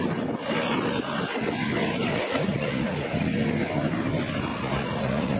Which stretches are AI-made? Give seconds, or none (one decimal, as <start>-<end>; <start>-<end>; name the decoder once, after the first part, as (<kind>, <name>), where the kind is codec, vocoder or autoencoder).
2.1-3.3 (vocoder, Vocos); 4.5-5.4